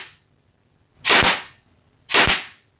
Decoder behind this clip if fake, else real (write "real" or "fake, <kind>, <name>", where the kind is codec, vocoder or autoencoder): real